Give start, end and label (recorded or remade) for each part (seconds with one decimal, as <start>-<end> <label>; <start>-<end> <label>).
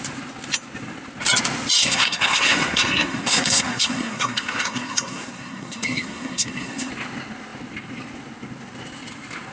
0.0-1.8 recorded; 1.8-6.9 remade; 6.9-9.5 recorded